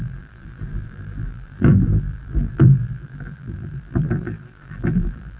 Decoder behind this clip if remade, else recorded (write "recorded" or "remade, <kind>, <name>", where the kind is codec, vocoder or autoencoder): remade, vocoder, BigVGAN v2